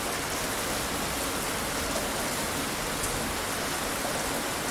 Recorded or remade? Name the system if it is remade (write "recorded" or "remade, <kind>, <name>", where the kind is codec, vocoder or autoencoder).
recorded